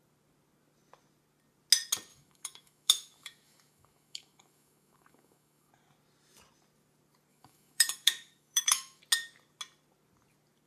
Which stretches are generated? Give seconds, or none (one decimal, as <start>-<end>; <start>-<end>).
2.1-5.7; 7.3-9.0